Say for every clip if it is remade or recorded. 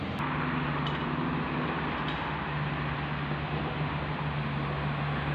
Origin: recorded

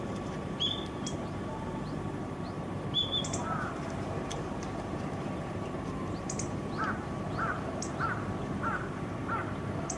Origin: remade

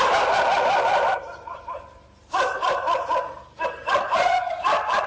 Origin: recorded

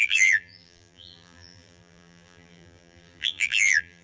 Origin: remade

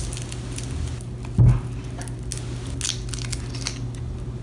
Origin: recorded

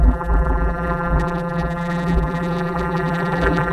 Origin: remade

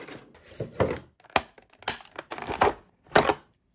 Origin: recorded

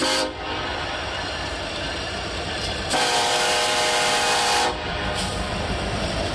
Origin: remade